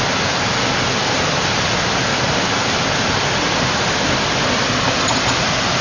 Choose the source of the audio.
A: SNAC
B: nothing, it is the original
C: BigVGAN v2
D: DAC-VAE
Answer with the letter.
B